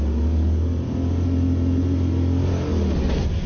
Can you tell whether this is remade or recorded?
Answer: recorded